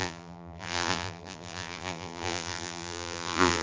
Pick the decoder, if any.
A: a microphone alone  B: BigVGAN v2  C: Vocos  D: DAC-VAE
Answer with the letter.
B